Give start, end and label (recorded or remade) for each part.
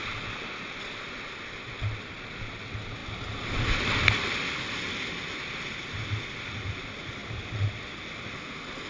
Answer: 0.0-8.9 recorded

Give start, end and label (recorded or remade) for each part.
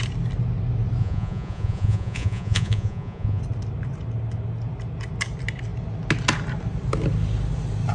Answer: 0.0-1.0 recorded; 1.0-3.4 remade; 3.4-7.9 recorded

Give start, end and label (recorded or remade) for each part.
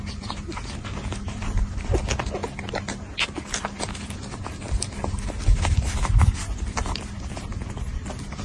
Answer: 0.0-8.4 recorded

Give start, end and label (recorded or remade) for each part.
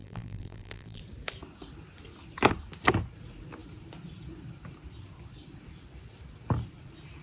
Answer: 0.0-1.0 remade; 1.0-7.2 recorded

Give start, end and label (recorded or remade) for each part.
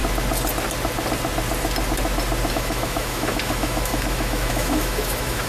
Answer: 0.0-2.5 recorded; 2.5-5.5 remade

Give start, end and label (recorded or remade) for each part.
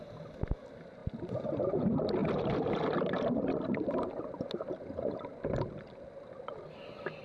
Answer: 0.0-7.2 recorded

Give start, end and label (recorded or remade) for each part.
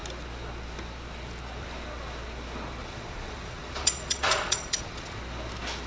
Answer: 0.0-2.8 recorded; 2.8-5.2 remade; 5.2-5.9 recorded